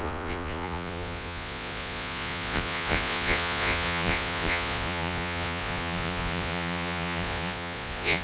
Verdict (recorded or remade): remade